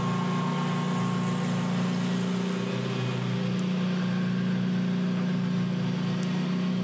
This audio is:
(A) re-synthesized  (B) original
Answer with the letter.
B